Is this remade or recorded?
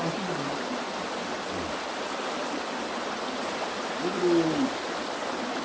recorded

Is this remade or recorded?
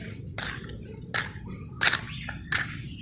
recorded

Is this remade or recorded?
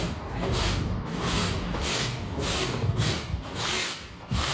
remade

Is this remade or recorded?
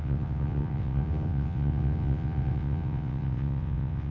remade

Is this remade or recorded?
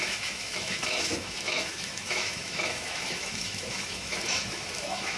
remade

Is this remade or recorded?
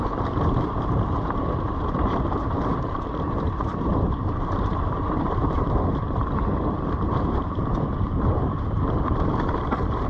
remade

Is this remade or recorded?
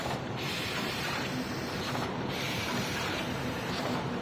remade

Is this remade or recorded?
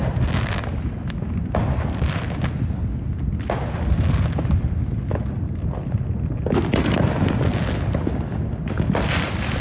recorded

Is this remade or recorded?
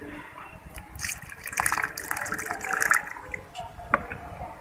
remade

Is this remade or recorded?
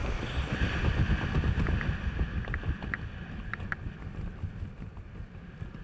recorded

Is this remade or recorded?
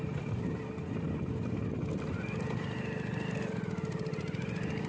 recorded